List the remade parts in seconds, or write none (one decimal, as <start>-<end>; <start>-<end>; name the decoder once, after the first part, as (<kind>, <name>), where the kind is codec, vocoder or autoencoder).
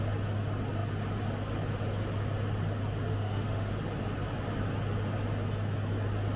3.1-3.7 (autoencoder, DAC-VAE)